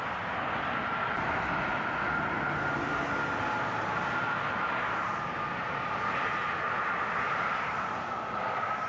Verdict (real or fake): real